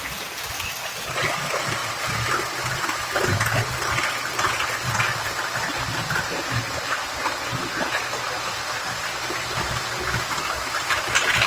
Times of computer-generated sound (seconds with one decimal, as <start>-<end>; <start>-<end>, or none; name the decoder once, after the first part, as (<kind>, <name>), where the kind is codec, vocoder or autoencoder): none